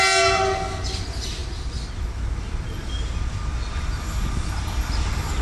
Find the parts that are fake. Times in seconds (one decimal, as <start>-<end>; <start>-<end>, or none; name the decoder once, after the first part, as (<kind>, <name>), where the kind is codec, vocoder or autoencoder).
none